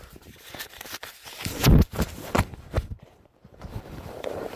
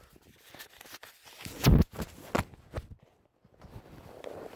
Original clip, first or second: second